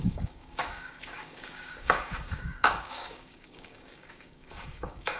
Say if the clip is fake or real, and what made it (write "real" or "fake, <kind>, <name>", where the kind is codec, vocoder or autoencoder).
fake, codec, DAC